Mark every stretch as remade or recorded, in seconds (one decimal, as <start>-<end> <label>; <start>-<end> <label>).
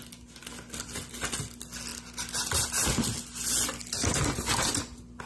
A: 0.0-5.3 recorded